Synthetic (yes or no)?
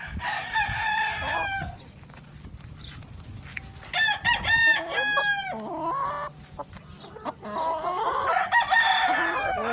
no